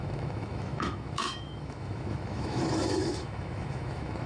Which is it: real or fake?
fake